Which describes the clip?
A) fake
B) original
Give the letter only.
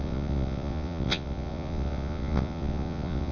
A